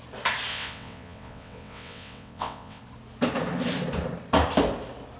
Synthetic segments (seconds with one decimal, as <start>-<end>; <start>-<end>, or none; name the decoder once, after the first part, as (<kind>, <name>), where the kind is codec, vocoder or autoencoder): 0.5-2.8 (vocoder, WaveNeXt)